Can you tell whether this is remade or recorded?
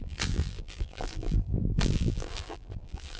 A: remade